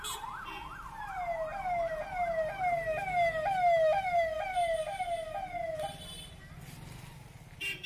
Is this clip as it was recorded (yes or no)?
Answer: yes